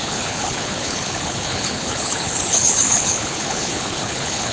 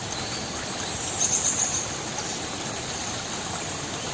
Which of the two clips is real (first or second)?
second